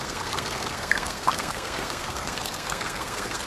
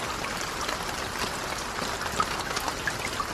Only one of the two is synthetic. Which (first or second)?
first